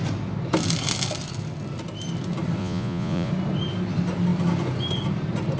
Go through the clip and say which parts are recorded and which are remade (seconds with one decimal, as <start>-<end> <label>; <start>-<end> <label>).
0.0-2.6 recorded; 2.6-3.3 remade; 3.3-5.6 recorded